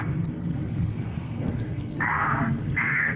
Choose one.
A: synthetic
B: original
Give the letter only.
A